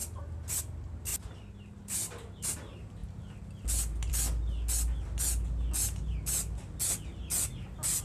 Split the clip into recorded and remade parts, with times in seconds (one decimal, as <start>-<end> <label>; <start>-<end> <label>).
0.0-8.0 recorded